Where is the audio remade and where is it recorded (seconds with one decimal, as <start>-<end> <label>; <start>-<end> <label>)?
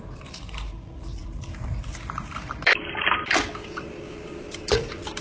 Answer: 0.0-5.2 remade